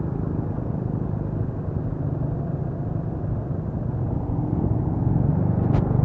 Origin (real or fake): real